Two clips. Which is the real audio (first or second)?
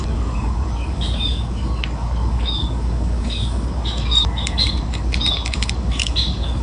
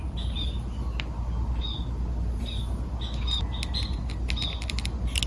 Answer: second